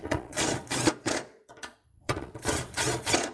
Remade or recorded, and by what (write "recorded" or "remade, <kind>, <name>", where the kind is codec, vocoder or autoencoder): remade, vocoder, Vocos